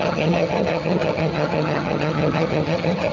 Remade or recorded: remade